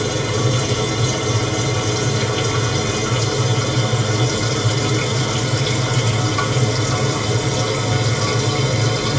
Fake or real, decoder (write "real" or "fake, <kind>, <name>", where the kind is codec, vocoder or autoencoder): real